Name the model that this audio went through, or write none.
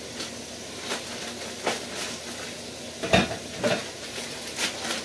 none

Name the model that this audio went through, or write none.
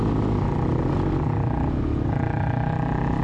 none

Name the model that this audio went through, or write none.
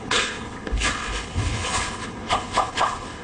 codec, HILCodec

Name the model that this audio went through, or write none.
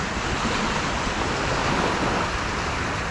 none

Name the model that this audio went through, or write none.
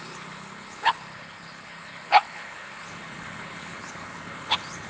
codec, HILCodec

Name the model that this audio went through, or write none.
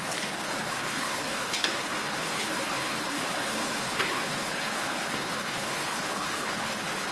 codec, HILCodec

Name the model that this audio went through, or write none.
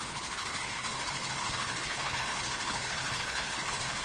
codec, HILCodec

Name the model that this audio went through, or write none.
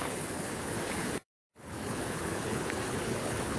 codec, HILCodec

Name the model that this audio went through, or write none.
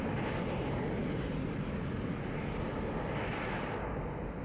none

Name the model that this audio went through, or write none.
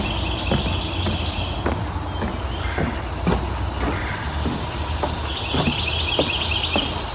none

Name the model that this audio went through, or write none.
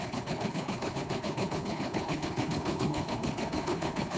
codec, HILCodec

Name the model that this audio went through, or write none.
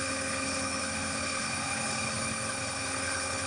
codec, HILCodec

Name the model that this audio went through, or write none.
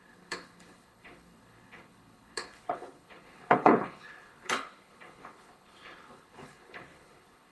codec, HILCodec